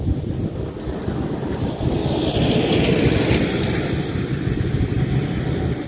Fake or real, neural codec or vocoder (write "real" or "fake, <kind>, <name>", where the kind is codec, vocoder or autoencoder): real